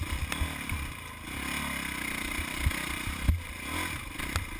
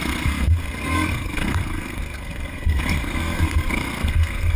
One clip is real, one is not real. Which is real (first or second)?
first